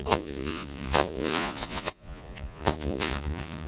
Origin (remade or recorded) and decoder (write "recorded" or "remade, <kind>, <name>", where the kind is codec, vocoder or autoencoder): remade, vocoder, Vocos